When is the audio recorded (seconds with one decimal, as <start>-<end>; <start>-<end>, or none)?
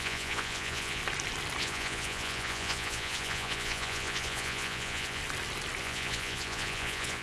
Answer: 1.0-1.6; 5.2-5.8